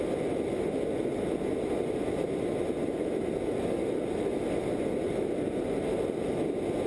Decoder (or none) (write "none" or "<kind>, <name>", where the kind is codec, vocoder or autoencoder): none